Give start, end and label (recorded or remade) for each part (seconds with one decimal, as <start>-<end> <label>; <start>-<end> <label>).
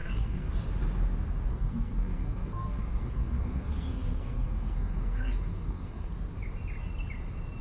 0.0-0.5 remade; 0.5-1.5 recorded; 1.5-6.1 remade; 6.1-7.6 recorded